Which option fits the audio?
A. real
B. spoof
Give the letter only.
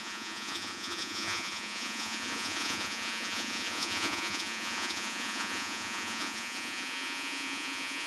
B